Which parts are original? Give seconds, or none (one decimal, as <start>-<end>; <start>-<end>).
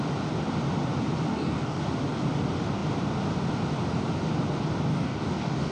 0.0-1.3; 1.8-4.9